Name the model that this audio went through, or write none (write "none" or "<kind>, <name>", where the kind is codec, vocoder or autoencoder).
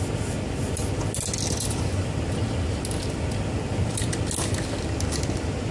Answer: none